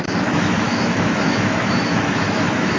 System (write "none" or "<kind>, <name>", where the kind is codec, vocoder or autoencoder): autoencoder, DAC-VAE